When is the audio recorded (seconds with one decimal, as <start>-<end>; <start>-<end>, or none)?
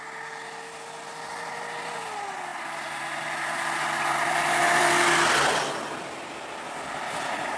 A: 0.0-7.6